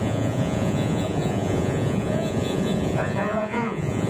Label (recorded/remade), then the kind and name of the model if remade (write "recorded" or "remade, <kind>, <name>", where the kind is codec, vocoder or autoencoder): remade, vocoder, Vocos